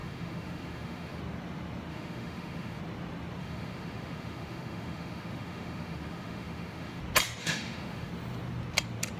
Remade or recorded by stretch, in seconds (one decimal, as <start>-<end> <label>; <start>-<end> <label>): 0.0-1.2 remade; 1.2-1.9 recorded; 1.9-2.8 remade; 2.8-3.4 recorded; 3.4-7.0 remade; 7.0-7.4 recorded; 7.4-8.1 remade; 8.1-9.2 recorded